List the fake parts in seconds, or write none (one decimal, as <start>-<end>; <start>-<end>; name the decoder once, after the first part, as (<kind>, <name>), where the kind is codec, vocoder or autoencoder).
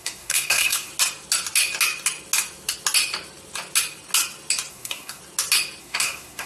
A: 0.0-0.9 (codec, SNAC); 4.7-5.2; 5.8-6.5